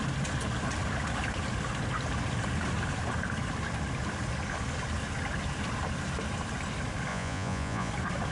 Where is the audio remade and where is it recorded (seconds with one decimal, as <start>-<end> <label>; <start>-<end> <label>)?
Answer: 0.0-7.1 recorded; 7.1-7.9 remade; 7.9-8.3 recorded

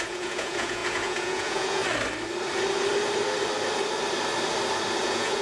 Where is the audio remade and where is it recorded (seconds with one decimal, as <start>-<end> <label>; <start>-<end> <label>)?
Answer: 0.0-1.8 remade; 1.8-5.0 recorded; 5.0-5.4 remade

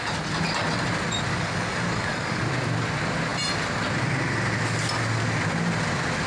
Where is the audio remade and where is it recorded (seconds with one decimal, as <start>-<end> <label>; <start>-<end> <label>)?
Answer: 0.0-1.3 recorded; 1.3-2.4 remade; 2.4-6.3 recorded

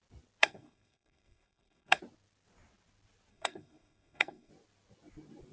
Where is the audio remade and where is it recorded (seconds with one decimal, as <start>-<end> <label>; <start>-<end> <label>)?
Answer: 0.0-0.4 recorded; 0.4-2.0 remade; 2.0-3.3 recorded; 3.3-4.5 remade; 4.5-5.5 recorded

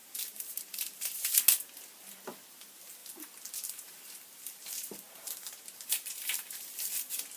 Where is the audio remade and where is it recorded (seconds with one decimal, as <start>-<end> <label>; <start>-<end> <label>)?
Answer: 0.0-1.3 remade; 1.3-3.0 recorded; 3.0-6.8 remade; 6.8-7.4 recorded

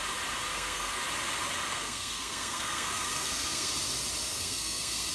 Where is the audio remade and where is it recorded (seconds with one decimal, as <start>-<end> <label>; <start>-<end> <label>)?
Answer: 0.0-0.5 recorded; 0.5-1.0 remade; 1.0-1.7 recorded; 1.7-3.7 remade; 3.7-4.3 recorded; 4.3-5.1 remade